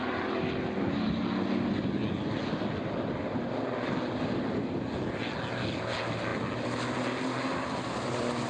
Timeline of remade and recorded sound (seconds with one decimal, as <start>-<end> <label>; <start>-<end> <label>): 0.0-8.5 recorded